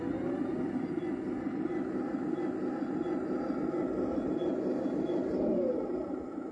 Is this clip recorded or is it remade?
recorded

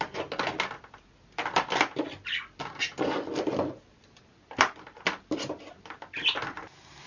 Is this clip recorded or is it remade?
recorded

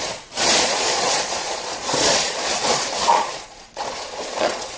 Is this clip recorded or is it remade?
remade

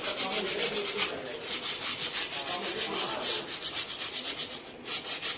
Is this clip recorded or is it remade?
recorded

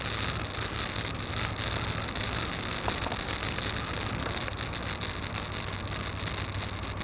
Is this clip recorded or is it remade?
recorded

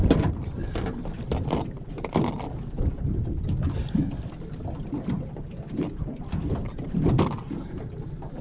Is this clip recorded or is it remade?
recorded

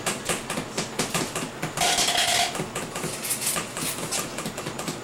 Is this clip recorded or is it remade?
recorded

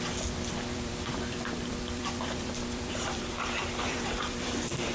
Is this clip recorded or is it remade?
remade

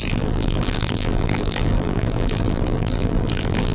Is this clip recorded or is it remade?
remade